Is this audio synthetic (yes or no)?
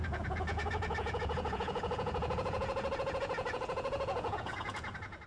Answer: yes